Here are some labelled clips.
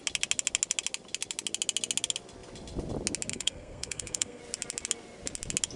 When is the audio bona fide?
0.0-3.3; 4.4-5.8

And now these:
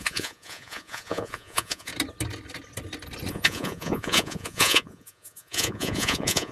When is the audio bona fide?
1.9-3.3